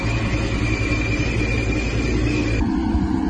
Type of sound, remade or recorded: recorded